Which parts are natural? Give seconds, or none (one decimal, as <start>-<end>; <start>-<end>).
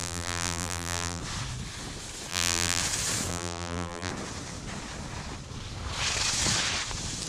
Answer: 1.2-2.3; 2.8-3.3; 4.1-7.3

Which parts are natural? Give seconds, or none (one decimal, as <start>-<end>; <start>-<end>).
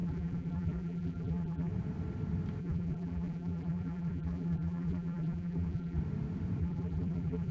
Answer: 1.7-2.6; 6.0-6.6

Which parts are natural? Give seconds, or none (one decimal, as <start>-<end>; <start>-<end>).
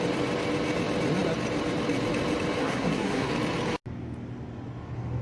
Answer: 0.0-2.6; 3.3-5.2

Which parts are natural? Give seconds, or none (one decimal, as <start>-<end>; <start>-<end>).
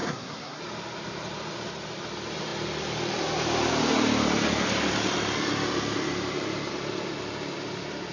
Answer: 0.6-8.1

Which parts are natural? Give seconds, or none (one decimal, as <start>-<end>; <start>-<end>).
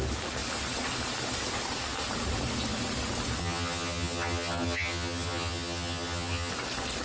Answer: 0.0-3.4; 6.5-7.0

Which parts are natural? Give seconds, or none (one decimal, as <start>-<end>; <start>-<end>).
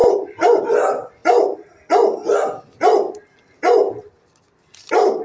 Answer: 1.2-4.3